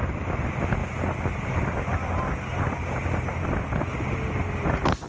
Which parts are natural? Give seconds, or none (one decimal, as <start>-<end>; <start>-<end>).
0.0-5.1